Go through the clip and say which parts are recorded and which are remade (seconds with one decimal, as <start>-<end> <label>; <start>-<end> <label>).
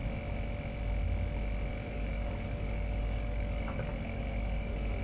0.0-1.7 recorded; 1.7-5.0 remade